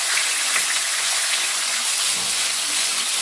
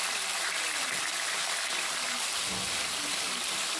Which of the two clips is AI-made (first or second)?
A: first